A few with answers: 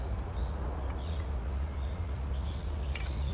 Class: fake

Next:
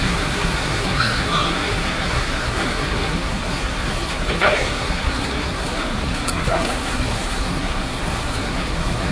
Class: fake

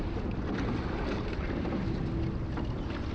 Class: real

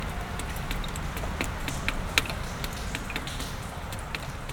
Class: real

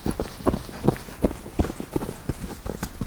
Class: real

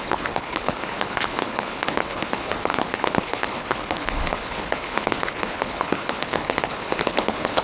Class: fake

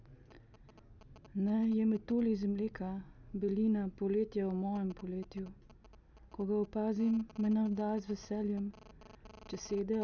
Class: real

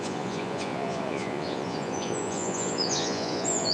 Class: fake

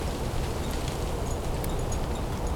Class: real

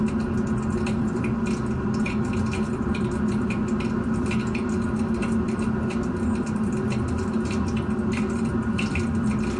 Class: real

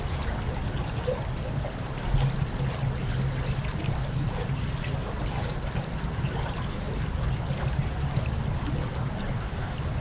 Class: real